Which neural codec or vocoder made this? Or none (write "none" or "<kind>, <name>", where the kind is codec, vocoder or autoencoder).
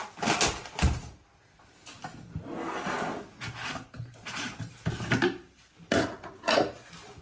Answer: none